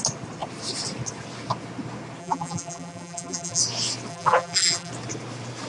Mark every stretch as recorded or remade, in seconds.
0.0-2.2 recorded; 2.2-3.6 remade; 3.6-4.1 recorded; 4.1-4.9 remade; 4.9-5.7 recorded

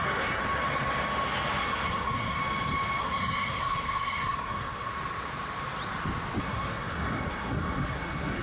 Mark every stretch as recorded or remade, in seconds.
0.0-0.4 remade; 0.4-1.6 recorded; 1.6-2.4 remade; 2.4-3.0 recorded; 3.0-4.9 remade; 4.9-6.4 recorded; 6.4-8.4 remade

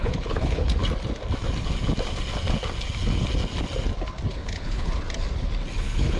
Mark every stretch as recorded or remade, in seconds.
0.0-0.8 remade; 0.8-4.3 recorded; 4.3-4.9 remade; 4.9-5.8 recorded; 5.8-6.2 remade

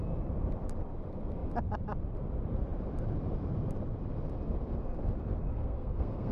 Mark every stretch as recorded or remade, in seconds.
0.0-5.5 recorded; 5.5-6.3 remade

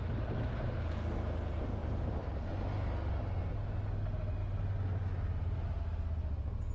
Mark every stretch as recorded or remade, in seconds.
0.0-6.7 recorded